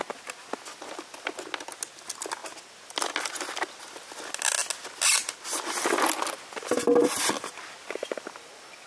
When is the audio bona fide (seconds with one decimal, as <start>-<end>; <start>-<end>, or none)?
0.0-8.9